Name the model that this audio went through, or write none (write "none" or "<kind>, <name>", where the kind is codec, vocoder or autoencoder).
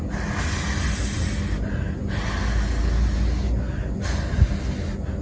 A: none